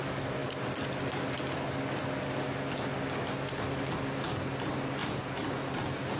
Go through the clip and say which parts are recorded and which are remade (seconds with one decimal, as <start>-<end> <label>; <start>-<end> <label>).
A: 0.0-6.2 recorded